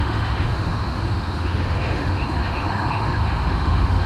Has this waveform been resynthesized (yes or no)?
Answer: yes